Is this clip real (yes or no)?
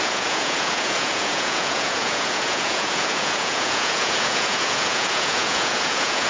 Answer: no